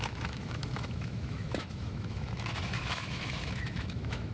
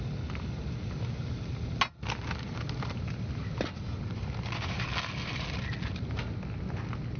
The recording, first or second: second